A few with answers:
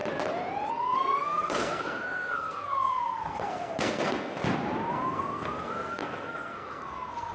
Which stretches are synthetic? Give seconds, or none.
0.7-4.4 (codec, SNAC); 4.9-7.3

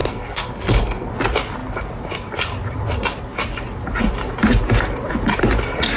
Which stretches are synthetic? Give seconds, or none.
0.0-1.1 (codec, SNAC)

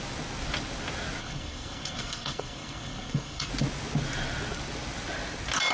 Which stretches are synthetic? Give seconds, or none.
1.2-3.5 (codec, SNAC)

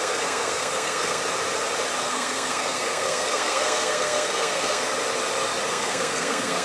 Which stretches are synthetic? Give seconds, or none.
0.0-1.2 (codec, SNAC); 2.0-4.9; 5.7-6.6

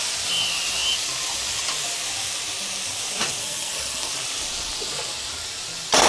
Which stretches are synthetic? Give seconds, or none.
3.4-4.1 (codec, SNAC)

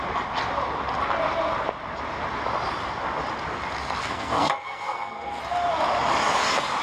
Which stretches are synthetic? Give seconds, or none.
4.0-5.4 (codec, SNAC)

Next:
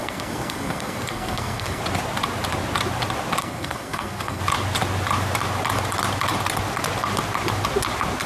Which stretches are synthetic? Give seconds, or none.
0.0-1.8 (codec, SNAC); 3.4-4.4

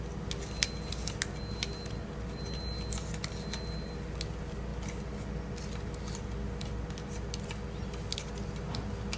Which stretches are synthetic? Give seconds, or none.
none